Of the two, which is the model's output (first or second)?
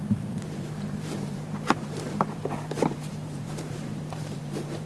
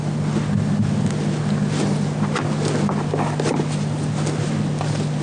first